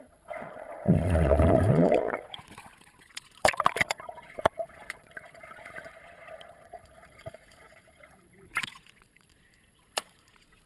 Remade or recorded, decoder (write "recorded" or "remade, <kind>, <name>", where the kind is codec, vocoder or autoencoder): remade, vocoder, Vocos